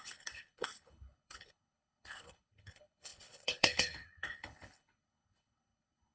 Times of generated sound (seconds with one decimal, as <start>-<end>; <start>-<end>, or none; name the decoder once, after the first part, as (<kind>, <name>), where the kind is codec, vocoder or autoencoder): 0.0-6.1 (codec, HILCodec)